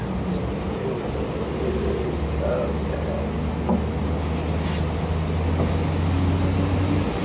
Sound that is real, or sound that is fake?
real